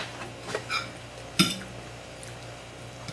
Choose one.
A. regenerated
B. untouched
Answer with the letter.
B